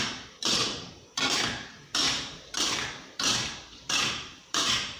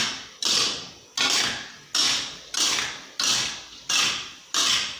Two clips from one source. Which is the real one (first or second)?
second